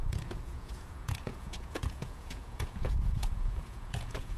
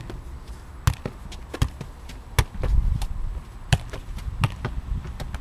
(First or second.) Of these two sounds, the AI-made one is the first